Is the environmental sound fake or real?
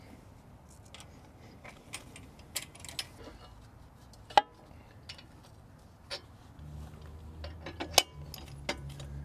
real